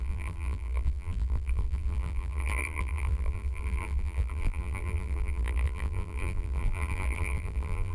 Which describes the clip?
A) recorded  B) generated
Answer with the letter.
B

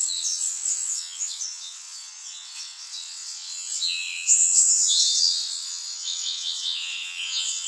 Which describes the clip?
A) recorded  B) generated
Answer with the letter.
B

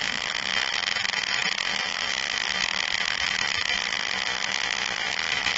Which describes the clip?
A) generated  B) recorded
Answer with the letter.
B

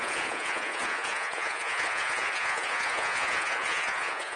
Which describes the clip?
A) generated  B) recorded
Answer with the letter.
A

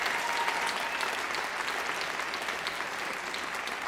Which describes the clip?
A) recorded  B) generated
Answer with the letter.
A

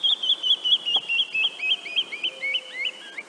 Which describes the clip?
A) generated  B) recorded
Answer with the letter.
B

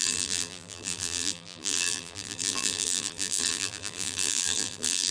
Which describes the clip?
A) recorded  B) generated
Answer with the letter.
B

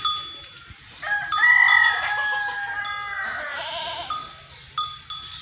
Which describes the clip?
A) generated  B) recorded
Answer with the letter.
B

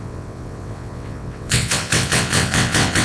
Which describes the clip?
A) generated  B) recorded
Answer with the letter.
A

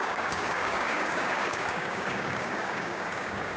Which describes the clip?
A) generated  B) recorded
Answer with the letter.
A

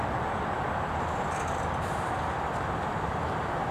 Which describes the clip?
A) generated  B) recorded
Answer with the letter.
B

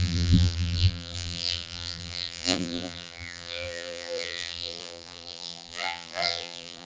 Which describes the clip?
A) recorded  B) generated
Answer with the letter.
B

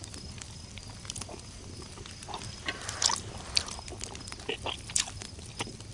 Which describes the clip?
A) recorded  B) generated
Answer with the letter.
A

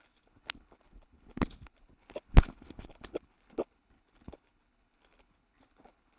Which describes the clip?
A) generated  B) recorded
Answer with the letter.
A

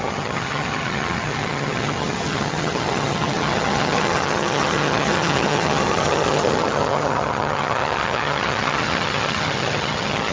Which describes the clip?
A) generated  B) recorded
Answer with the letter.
A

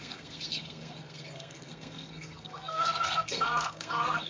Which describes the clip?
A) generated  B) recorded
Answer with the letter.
A